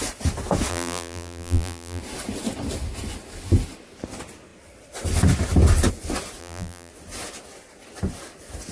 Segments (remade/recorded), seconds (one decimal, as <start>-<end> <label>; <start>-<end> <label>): 0.0-0.7 recorded; 0.7-2.0 remade; 2.0-6.4 recorded; 6.4-6.9 remade; 6.9-8.7 recorded